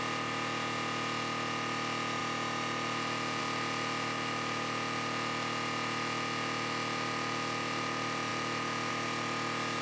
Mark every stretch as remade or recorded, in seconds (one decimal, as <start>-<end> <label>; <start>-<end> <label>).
0.0-9.8 recorded